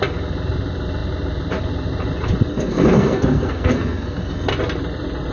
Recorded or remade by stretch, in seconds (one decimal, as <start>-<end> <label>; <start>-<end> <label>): 0.0-2.5 recorded; 2.5-4.5 remade; 4.5-5.3 recorded